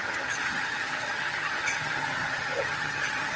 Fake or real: fake